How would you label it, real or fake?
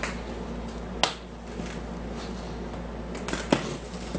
real